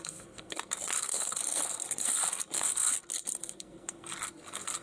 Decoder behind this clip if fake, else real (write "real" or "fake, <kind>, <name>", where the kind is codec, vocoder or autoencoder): fake, codec, SNAC